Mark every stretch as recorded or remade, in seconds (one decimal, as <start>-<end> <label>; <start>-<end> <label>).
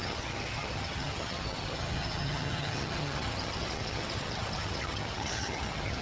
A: 0.0-6.0 remade